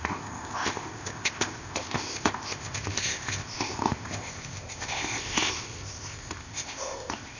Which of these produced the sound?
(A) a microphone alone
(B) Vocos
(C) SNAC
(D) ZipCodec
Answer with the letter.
D